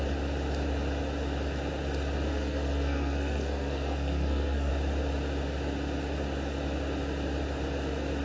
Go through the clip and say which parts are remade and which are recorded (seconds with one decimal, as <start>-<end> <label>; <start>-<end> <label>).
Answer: 0.0-2.3 recorded; 2.3-4.7 remade; 4.7-8.2 recorded